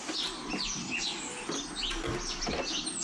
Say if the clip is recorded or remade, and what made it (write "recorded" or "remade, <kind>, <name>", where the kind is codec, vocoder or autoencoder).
recorded